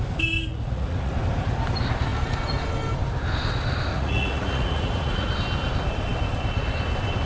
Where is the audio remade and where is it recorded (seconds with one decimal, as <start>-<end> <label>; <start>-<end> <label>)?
0.0-0.5 recorded; 0.5-1.1 remade; 1.1-3.9 recorded; 3.9-5.3 remade; 5.3-7.3 recorded